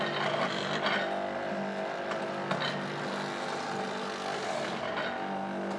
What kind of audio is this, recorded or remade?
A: recorded